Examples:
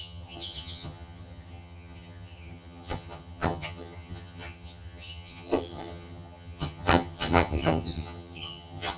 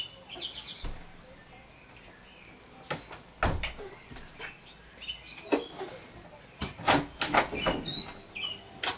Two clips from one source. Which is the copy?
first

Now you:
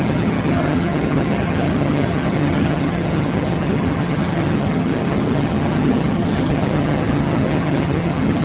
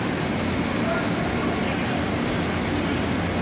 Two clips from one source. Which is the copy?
first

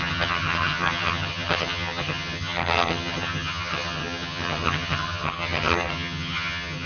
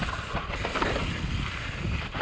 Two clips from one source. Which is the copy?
first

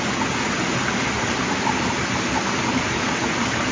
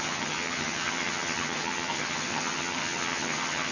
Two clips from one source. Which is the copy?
second